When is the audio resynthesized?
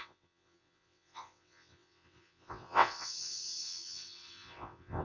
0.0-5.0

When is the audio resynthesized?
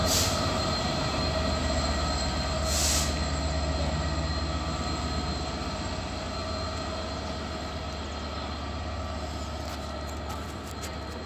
0.0-1.2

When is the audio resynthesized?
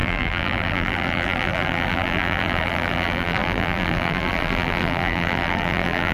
0.0-6.1